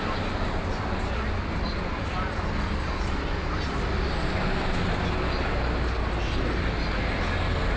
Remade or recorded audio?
recorded